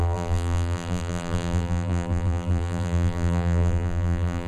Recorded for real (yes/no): no